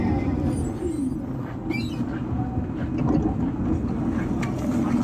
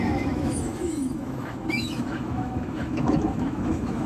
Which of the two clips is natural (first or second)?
first